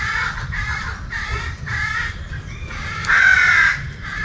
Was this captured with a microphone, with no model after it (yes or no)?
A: yes